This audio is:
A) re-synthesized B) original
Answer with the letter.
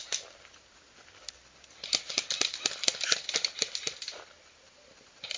B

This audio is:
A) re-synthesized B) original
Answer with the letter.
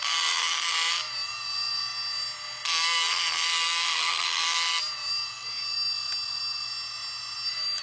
B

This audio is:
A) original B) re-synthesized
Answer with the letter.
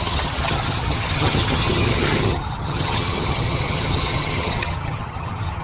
B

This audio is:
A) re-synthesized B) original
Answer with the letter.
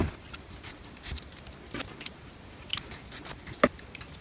B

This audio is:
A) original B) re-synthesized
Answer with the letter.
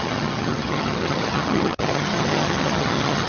B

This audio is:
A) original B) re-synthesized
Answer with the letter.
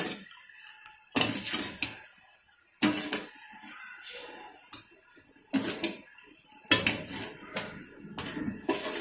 A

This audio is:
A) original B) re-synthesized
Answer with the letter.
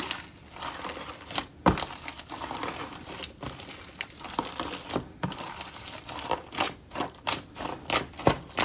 A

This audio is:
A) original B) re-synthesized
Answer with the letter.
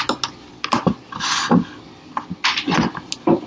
A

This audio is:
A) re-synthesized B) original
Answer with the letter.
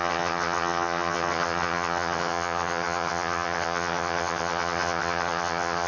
A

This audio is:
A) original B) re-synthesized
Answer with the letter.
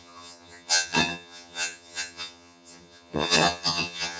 B